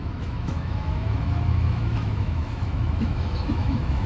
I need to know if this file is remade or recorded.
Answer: remade